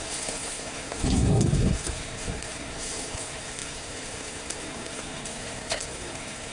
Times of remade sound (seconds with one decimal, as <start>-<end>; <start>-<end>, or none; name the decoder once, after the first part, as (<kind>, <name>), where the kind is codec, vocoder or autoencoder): 0.0-6.5 (codec, SNAC)